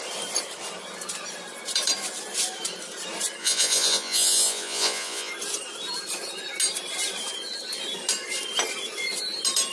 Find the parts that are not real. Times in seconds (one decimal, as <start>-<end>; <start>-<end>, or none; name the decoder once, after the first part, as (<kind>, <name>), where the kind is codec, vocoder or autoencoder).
3.4-5.3 (vocoder, Vocos)

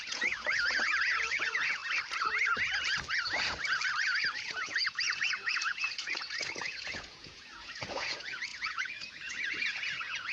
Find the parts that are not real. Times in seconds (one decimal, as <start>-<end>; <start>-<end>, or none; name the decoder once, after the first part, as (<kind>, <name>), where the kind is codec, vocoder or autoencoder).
0.0-1.8 (vocoder, Vocos); 4.4-10.3